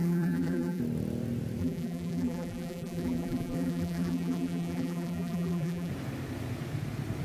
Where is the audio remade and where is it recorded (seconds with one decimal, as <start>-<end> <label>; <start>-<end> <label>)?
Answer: 0.0-0.8 remade; 0.8-1.6 recorded; 1.6-5.9 remade; 5.9-7.2 recorded